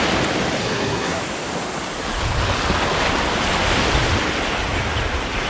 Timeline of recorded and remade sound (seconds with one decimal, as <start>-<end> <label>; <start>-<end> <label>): 0.0-0.6 recorded; 0.6-1.2 remade; 1.2-5.5 recorded